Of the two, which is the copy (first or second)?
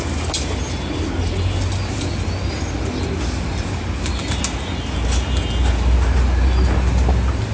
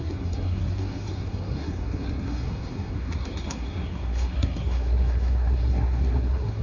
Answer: second